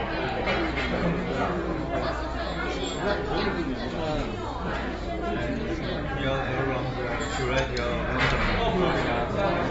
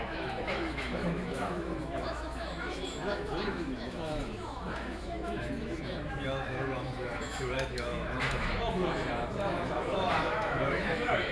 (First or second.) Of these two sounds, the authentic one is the first